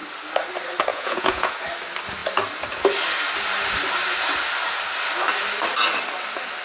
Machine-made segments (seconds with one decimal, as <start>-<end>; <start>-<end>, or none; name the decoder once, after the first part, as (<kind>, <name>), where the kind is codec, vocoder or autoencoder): 0.9-1.6 (vocoder, Vocos)